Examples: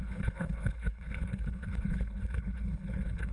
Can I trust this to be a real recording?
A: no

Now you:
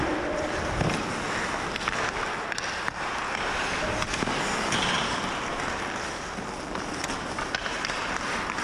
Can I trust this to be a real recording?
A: yes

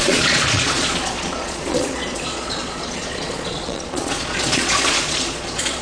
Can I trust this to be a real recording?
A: no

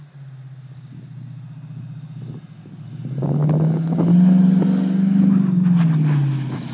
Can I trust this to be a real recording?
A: yes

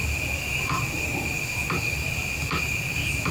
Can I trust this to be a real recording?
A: yes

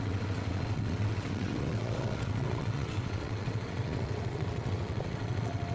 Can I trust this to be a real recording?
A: no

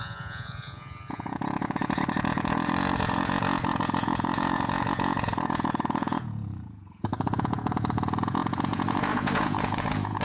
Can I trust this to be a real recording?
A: no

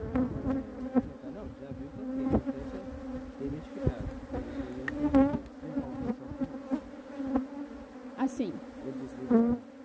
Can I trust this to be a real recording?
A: yes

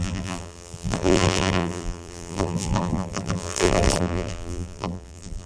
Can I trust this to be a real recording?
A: no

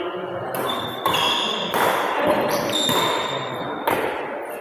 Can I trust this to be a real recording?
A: yes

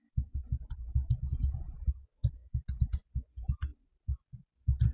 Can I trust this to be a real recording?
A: yes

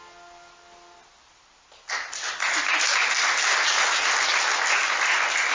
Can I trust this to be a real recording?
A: yes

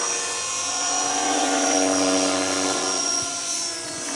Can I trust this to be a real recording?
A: no